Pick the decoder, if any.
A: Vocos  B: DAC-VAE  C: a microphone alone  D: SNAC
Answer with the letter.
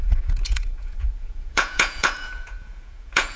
A